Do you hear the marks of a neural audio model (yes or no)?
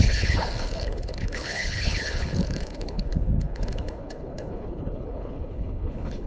yes